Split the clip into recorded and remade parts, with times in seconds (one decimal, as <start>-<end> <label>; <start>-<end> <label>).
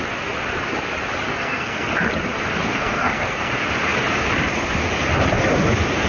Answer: 0.0-1.3 recorded; 1.3-1.9 remade; 1.9-2.7 recorded; 2.7-3.5 remade; 3.5-6.1 recorded